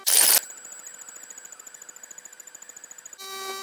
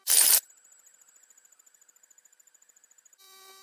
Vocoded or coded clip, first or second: second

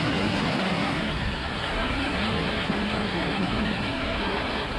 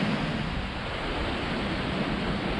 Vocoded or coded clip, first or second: first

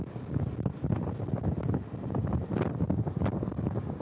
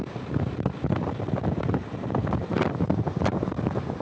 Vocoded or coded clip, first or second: second